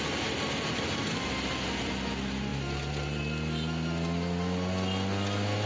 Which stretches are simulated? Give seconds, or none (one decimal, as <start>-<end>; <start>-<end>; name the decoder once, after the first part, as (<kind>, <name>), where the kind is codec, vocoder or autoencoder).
none